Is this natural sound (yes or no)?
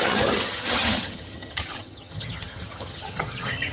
no